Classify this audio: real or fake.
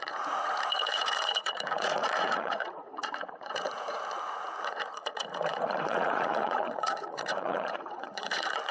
fake